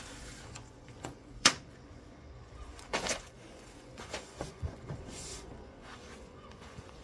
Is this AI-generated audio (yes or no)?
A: yes